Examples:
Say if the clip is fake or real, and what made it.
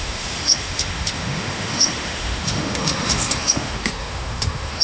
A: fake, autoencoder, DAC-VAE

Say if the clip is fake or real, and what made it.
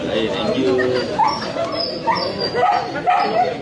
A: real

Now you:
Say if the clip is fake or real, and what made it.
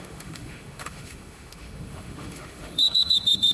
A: fake, autoencoder, DAC-VAE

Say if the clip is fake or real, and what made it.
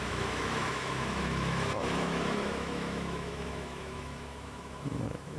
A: fake, autoencoder, DAC-VAE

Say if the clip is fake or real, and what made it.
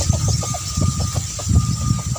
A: real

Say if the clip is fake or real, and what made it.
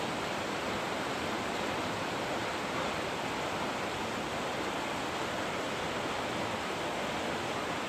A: real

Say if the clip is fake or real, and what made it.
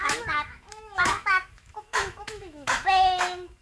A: fake, autoencoder, DAC-VAE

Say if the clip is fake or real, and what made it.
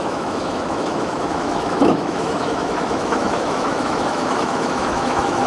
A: fake, autoencoder, DAC-VAE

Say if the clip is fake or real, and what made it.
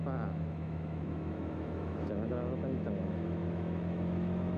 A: fake, autoencoder, DAC-VAE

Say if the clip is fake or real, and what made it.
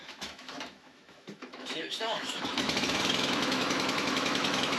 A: fake, autoencoder, DAC-VAE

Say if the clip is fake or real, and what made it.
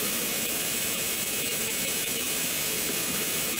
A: fake, autoencoder, DAC-VAE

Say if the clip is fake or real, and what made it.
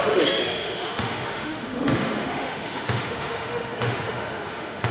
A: fake, autoencoder, DAC-VAE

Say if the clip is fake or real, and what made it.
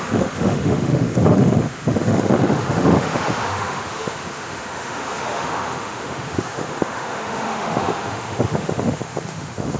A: fake, autoencoder, DAC-VAE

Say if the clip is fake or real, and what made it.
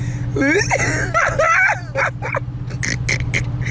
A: real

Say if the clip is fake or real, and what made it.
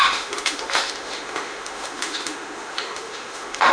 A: fake, autoencoder, DAC-VAE